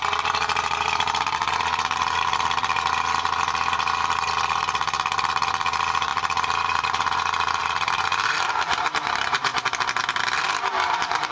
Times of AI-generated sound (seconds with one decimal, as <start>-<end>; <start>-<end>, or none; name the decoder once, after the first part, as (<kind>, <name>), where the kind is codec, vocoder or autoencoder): 0.0-9.5 (vocoder, BigVGAN v2); 10.5-11.3